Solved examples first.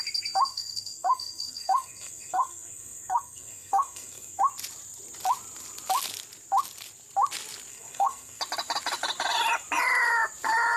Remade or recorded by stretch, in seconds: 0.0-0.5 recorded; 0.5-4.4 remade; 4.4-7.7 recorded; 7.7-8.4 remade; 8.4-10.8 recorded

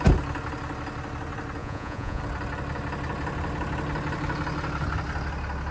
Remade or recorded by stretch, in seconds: 0.0-1.6 recorded; 1.6-2.2 remade; 2.2-5.7 recorded

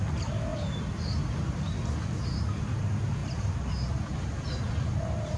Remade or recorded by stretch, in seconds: 0.0-5.4 recorded

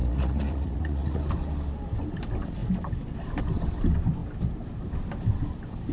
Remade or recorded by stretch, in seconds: 0.0-1.2 remade; 1.2-5.9 recorded

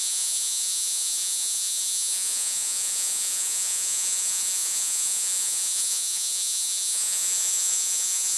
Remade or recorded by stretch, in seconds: 0.0-8.4 remade

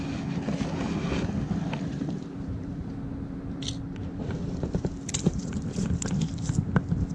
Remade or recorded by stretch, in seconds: 0.0-1.9 recorded; 1.9-2.9 remade; 2.9-4.0 recorded; 4.0-5.4 remade; 5.4-7.1 recorded

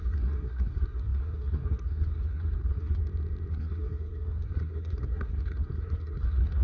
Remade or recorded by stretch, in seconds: 0.0-3.0 remade; 3.0-3.5 recorded; 3.5-6.6 remade

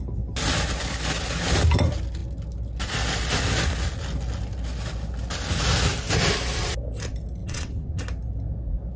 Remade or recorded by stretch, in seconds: 0.0-7.4 recorded; 7.4-8.0 remade; 8.0-9.0 recorded